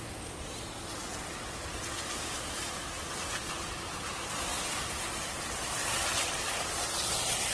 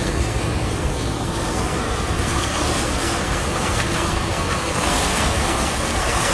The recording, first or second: first